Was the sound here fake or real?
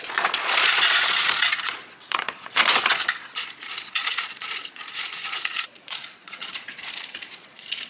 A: fake